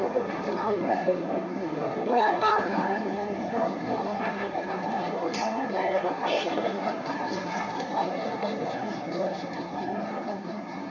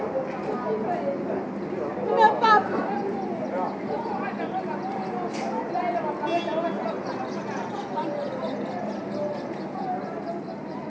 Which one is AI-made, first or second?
first